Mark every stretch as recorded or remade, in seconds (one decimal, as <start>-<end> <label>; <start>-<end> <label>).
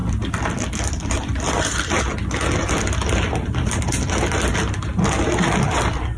0.0-2.0 remade; 2.0-6.2 recorded